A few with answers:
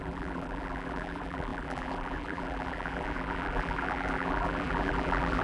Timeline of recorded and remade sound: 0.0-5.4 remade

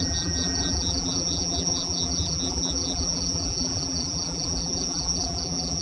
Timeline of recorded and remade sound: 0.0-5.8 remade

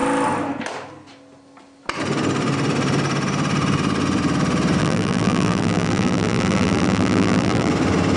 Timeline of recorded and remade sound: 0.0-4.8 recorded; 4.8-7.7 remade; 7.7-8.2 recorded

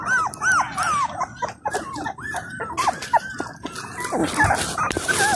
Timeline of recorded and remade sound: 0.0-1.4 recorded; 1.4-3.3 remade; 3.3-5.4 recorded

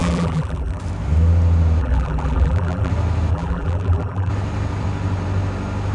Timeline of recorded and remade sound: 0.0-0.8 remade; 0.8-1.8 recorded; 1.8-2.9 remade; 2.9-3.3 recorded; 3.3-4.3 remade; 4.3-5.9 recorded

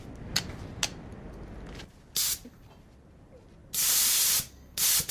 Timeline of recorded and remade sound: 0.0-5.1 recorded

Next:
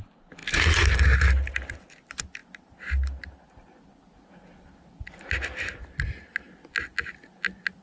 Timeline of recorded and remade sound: 0.0-7.8 recorded

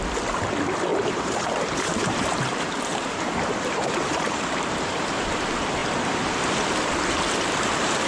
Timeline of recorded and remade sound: 0.0-0.9 recorded; 0.9-5.3 remade; 5.3-5.8 recorded; 5.8-6.9 remade; 6.9-8.1 recorded